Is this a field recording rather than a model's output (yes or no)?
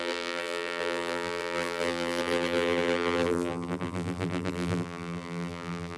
no